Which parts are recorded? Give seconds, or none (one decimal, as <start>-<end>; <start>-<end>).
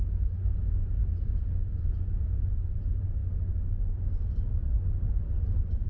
3.2-4.2